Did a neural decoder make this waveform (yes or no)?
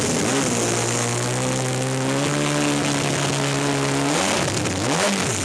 no